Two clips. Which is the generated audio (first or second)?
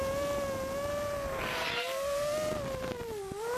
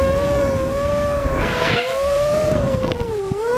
second